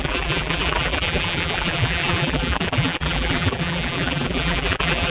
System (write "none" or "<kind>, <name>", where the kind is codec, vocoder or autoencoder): vocoder, BigVGAN v2